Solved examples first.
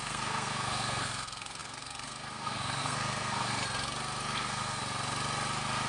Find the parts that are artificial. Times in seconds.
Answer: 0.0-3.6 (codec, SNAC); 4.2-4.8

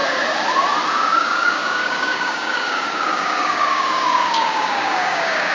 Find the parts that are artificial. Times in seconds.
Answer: 0.9-5.5 (codec, DAC)

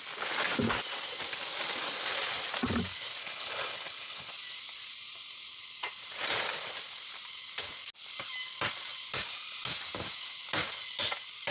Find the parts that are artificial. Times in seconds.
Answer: 3.2-4.3 (codec, HILCodec)

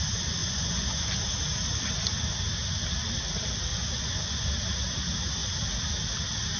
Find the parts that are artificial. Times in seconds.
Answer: 0.4-1.1 (vocoder, Vocos); 3.7-4.5